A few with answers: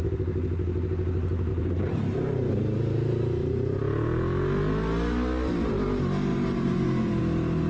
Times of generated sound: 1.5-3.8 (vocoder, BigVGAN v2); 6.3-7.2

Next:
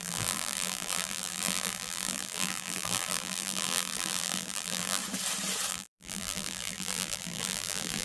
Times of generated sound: 0.0-5.0 (vocoder, BigVGAN v2); 5.7-8.0

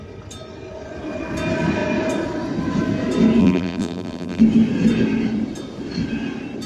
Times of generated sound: 3.4-4.4 (vocoder, BigVGAN v2)

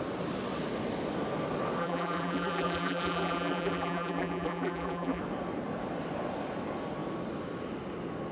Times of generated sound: 1.8-5.2 (vocoder, BigVGAN v2)

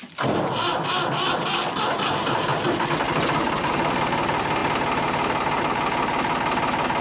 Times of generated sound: none

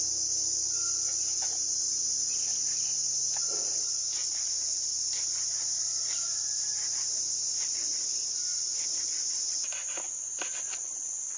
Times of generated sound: 0.0-9.8 (vocoder, BigVGAN v2)

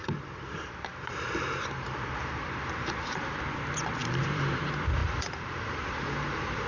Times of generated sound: 0.0-3.4 (vocoder, BigVGAN v2); 4.0-4.6; 5.0-6.7